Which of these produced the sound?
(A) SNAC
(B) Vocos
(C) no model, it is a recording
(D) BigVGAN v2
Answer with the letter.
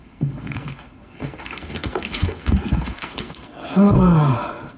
A